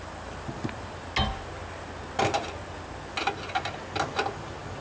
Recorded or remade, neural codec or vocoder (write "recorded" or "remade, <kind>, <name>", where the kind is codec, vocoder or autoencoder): recorded